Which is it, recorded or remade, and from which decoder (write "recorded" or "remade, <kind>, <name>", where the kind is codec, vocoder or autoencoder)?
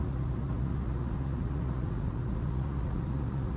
remade, vocoder, Vocos